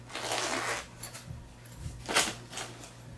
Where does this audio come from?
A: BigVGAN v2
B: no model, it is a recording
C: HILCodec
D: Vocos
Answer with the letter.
B